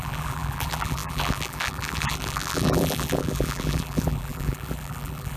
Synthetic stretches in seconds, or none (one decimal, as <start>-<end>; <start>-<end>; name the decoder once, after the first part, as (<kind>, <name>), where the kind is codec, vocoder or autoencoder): 0.0-5.4 (vocoder, BigVGAN v2)